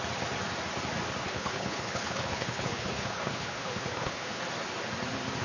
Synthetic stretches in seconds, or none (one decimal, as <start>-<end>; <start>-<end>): 1.2-4.4